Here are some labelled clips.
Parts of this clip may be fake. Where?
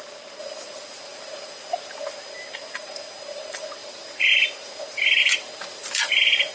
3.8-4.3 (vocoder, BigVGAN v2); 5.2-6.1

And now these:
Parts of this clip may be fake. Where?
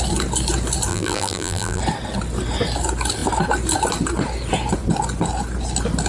0.9-1.8 (vocoder, BigVGAN v2)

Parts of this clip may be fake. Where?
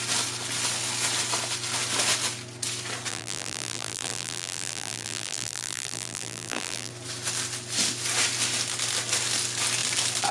3.1-6.9 (vocoder, BigVGAN v2)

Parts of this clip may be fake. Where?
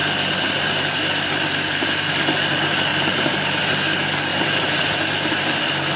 2.9-3.6 (vocoder, BigVGAN v2); 4.3-5.6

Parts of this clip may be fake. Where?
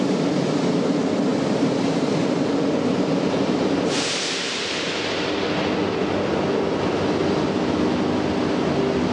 1.3-2.2 (vocoder, BigVGAN v2)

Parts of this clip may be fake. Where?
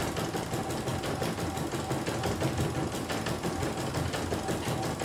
none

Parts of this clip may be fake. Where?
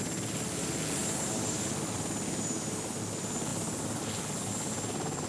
1.0-2.1 (vocoder, BigVGAN v2); 3.5-4.5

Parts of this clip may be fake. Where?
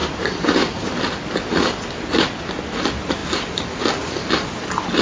0.0-1.1 (vocoder, BigVGAN v2)